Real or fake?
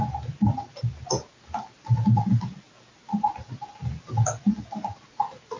real